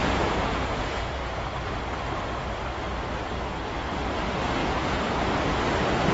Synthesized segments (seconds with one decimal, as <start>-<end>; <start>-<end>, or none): 0.0-1.3; 4.6-5.2